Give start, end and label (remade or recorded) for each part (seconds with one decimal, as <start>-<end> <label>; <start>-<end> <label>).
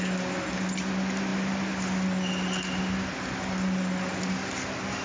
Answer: 0.0-5.0 recorded